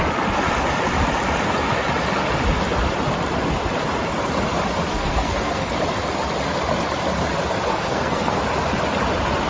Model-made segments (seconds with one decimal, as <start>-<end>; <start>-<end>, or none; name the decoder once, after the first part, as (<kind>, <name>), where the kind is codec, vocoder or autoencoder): 4.9-5.7 (codec, SNAC); 7.7-8.4